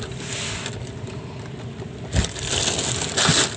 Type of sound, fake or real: real